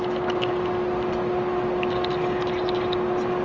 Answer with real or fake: real